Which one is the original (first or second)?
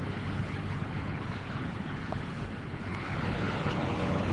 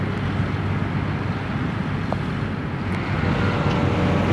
second